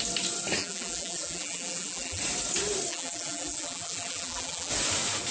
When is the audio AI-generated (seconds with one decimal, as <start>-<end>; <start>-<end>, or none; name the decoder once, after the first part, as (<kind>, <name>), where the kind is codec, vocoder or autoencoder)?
0.6-2.2 (vocoder, BigVGAN v2); 2.9-4.7